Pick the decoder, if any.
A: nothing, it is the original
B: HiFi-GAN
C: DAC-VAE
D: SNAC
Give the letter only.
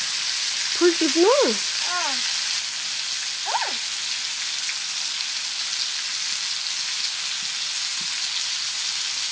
A